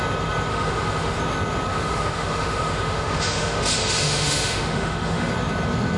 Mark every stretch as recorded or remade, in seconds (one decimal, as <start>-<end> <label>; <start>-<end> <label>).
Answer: 0.0-0.5 recorded; 0.5-1.2 remade; 1.2-1.7 recorded; 1.7-5.3 remade; 5.3-6.0 recorded